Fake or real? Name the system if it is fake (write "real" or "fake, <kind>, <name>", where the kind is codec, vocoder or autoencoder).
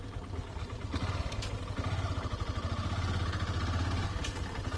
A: real